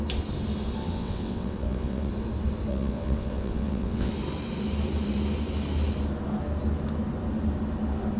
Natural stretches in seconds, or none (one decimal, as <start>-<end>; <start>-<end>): 0.0-0.8; 2.1-2.7; 4.1-8.2